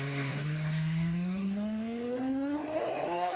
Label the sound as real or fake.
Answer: fake